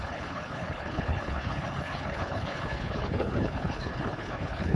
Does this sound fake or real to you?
fake